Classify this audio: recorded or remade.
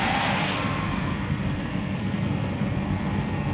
remade